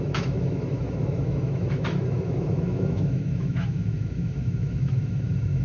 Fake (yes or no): yes